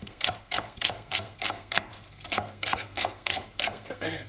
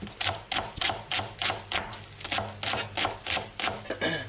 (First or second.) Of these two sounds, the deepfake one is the first